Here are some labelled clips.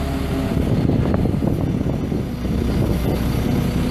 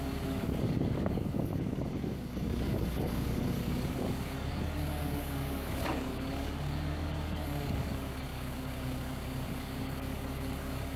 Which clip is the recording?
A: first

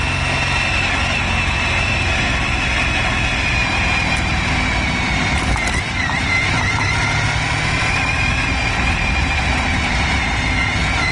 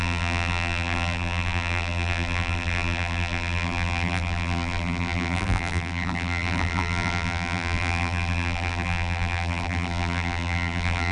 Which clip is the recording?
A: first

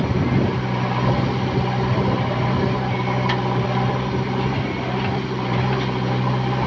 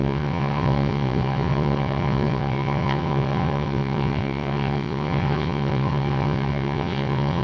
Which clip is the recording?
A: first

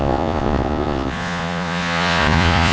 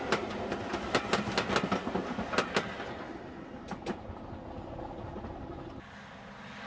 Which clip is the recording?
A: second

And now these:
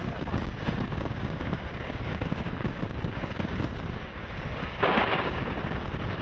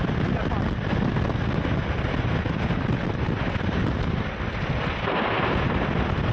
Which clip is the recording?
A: second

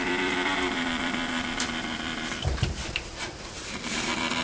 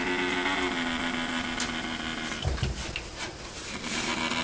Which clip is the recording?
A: second